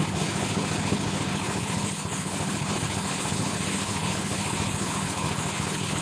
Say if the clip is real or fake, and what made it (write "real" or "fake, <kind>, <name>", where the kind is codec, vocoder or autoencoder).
fake, codec, HILCodec